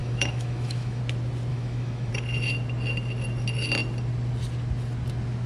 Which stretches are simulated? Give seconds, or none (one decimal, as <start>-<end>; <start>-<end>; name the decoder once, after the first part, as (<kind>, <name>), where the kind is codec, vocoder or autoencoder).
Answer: 0.0-1.0 (autoencoder, DAC-VAE); 1.5-2.1